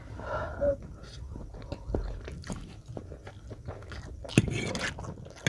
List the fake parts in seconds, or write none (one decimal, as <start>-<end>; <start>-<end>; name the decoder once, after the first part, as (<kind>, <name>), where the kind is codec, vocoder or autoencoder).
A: 2.4-3.0 (vocoder, BigVGAN v2)